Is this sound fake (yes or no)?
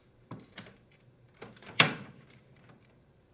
yes